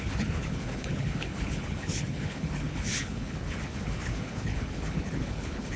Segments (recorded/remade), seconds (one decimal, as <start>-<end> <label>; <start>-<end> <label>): 0.0-5.8 remade